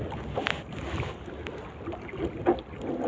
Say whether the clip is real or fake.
real